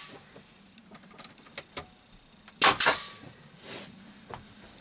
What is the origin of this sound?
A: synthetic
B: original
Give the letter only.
B